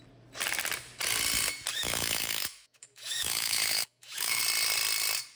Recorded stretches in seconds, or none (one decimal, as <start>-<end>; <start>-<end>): 0.0-1.7; 4.4-5.4